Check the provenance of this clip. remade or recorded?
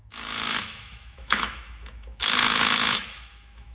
remade